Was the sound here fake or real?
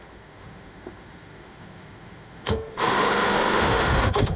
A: fake